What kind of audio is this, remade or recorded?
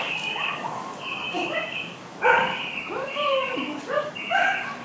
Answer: remade